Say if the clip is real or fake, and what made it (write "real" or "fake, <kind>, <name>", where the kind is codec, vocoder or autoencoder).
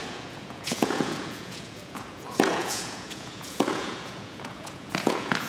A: fake, vocoder, Vocos